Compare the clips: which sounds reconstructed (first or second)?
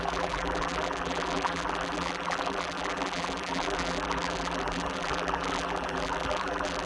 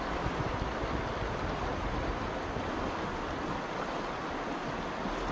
first